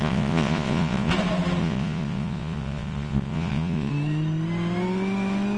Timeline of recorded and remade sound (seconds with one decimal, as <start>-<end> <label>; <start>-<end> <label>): 0.0-1.1 remade; 1.1-1.6 recorded; 1.6-3.9 remade; 3.9-5.6 recorded